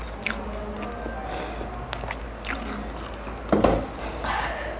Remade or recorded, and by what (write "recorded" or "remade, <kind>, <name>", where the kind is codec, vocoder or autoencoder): recorded